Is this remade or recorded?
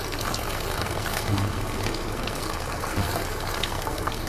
remade